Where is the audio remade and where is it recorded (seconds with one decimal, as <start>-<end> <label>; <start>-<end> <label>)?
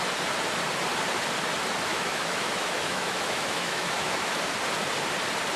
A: 0.0-1.9 recorded; 1.9-4.4 remade; 4.4-5.6 recorded